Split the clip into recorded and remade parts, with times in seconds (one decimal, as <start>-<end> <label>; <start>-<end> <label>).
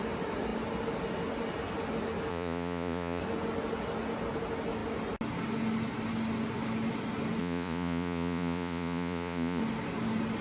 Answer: 0.0-2.3 recorded; 2.3-3.2 remade; 3.2-7.4 recorded; 7.4-9.6 remade; 9.6-10.4 recorded